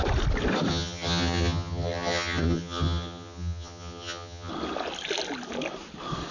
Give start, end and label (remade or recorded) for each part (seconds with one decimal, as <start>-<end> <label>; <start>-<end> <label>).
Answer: 0.0-0.7 recorded; 0.7-4.5 remade; 4.5-6.3 recorded

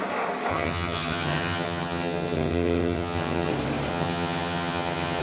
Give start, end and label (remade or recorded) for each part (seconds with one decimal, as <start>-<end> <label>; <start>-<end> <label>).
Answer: 0.0-0.5 recorded; 0.5-3.5 remade; 3.5-3.9 recorded; 3.9-5.2 remade